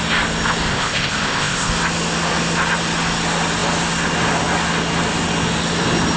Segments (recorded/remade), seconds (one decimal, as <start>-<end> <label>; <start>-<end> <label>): 0.0-0.7 recorded; 0.7-1.7 remade; 1.7-6.2 recorded